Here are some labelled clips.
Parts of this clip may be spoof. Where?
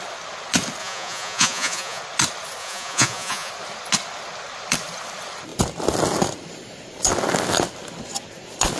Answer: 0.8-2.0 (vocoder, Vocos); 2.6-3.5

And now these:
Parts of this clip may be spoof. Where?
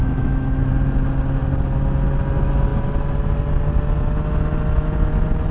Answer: 0.0-0.7 (autoencoder, DAC-VAE)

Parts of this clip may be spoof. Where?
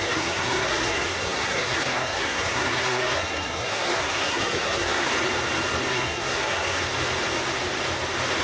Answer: 0.0-5.1 (codec, SNAC); 5.9-6.8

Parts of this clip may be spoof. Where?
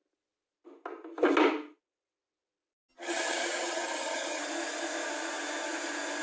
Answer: 2.9-4.4 (vocoder, HiFi-GAN)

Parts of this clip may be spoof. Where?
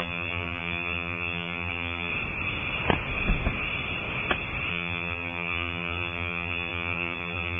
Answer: 0.0-2.1 (vocoder, BigVGAN v2); 4.7-7.6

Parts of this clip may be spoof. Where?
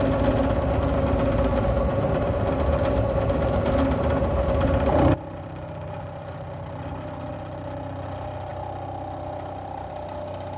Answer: none